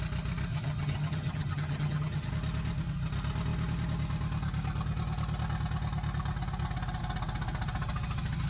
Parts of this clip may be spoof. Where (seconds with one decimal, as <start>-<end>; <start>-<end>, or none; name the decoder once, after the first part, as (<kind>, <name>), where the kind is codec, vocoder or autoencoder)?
0.5-2.3 (vocoder, HiFi-GAN)